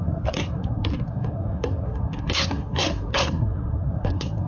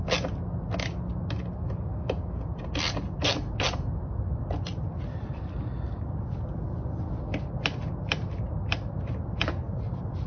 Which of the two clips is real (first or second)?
second